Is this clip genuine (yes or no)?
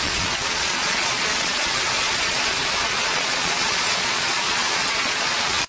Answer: no